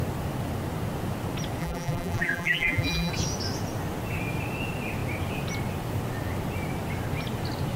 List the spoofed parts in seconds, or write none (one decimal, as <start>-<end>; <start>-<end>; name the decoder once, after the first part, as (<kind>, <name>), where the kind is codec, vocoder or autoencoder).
1.6-3.1 (vocoder, BigVGAN v2)